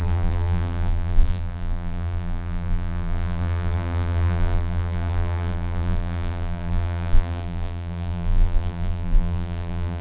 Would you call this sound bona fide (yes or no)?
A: no